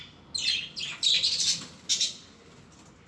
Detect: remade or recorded recorded